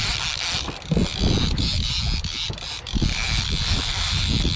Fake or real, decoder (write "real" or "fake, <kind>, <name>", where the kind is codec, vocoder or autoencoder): real